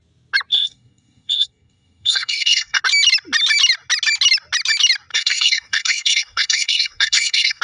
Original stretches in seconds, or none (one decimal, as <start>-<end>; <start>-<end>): 0.0-0.5; 2.8-5.1